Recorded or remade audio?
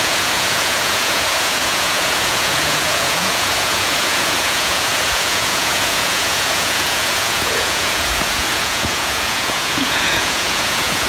remade